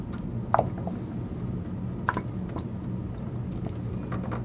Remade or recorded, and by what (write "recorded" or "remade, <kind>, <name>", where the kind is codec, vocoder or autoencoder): recorded